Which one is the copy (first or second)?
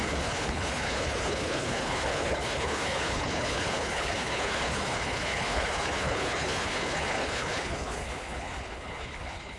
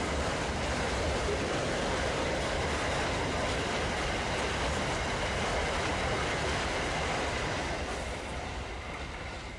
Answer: first